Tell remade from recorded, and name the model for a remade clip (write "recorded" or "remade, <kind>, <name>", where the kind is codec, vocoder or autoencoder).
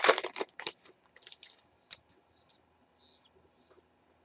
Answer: recorded